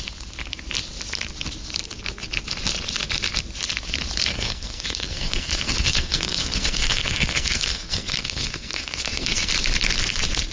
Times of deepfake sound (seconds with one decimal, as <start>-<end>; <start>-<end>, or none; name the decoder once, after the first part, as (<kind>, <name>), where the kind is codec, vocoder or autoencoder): 4.3-9.5 (codec, SNAC)